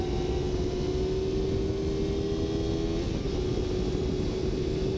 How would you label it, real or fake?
real